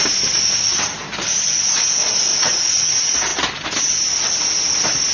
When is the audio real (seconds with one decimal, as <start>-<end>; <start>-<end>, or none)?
0.0-2.3; 2.9-5.1